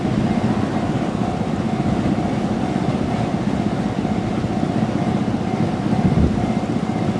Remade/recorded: recorded